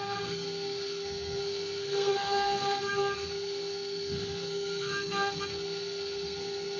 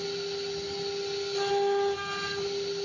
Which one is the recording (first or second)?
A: second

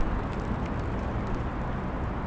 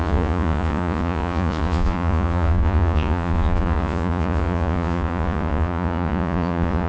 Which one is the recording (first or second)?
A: first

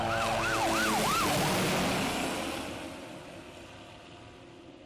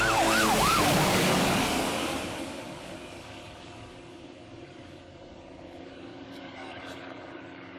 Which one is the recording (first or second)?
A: first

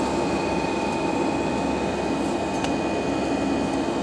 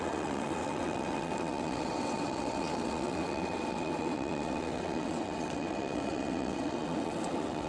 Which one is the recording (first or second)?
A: first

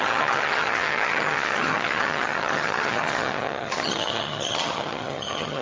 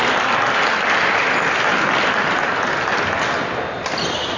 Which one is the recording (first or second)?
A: second